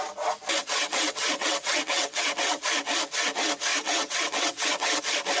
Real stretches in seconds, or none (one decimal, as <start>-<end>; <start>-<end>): 0.0-0.6; 2.6-3.7; 5.0-5.4